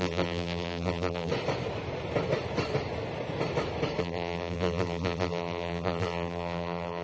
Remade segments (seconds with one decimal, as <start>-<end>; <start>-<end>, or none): 0.0-1.3; 4.0-7.0